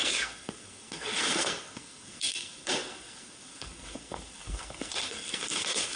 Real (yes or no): no